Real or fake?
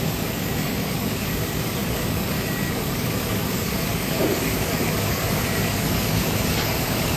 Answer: fake